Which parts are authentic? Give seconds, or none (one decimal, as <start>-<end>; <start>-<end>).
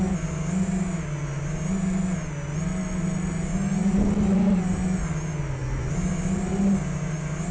0.0-7.5